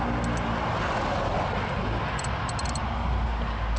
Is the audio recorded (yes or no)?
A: yes